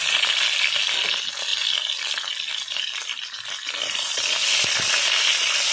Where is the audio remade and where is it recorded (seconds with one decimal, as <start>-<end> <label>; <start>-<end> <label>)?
0.0-5.7 recorded